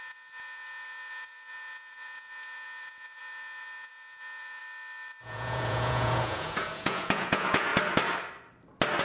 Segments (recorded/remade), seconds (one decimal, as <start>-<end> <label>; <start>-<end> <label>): 0.0-4.6 remade; 4.6-5.2 recorded; 5.2-7.7 remade; 7.7-9.0 recorded